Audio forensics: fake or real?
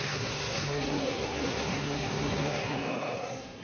fake